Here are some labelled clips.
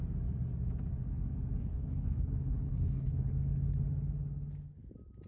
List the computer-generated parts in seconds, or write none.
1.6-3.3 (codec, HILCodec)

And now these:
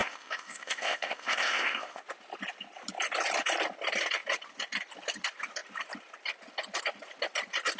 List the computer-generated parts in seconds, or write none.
0.0-2.0 (codec, ZipCodec)

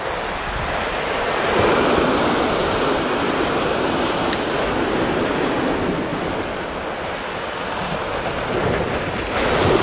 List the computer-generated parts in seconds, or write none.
none

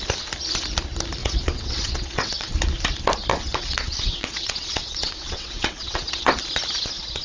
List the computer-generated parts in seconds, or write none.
1.2-2.5 (vocoder, WaveNeXt); 3.3-6.3

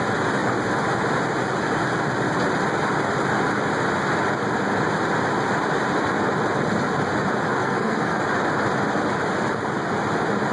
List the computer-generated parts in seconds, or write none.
7.6-8.2 (codec, SNAC)